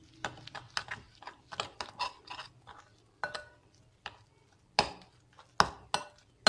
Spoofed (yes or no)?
no